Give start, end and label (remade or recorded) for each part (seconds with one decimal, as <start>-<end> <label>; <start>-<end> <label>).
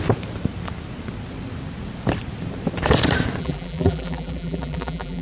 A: 0.0-3.4 recorded; 3.4-5.2 remade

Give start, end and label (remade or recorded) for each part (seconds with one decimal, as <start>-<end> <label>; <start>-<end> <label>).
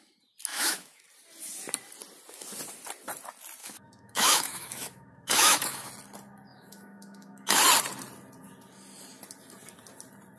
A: 0.0-0.5 recorded; 0.5-1.0 remade; 1.0-3.6 recorded; 3.6-5.9 remade; 5.9-6.5 recorded; 6.5-7.6 remade; 7.6-10.4 recorded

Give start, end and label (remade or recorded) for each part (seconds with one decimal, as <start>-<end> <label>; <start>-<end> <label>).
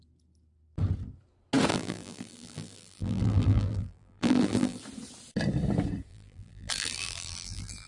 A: 0.0-1.7 recorded; 1.7-4.8 remade; 4.8-6.1 recorded; 6.1-7.9 remade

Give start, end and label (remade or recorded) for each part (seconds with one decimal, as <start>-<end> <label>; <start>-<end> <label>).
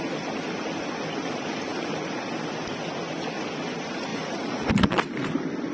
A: 0.0-4.1 recorded; 4.1-4.7 remade; 4.7-5.7 recorded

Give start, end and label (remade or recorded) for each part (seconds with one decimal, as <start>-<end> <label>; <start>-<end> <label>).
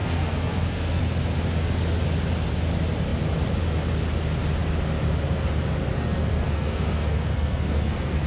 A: 0.0-1.0 remade; 1.0-5.9 recorded; 5.9-8.3 remade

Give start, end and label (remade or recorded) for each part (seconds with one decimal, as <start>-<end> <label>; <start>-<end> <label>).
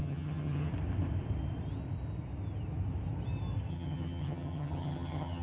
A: 0.0-0.7 remade; 0.7-3.7 recorded; 3.7-5.4 remade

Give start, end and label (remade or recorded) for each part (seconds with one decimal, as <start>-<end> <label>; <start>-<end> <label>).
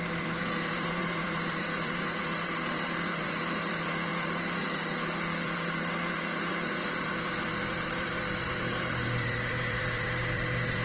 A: 0.0-10.8 remade